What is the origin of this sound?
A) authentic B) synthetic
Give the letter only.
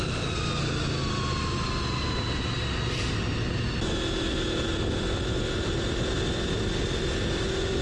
A